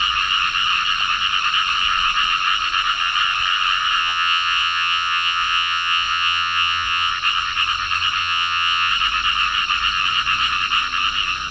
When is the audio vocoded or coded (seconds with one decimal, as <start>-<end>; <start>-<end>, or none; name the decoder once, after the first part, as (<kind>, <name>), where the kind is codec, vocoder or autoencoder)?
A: 4.0-7.1 (vocoder, Vocos); 8.2-8.9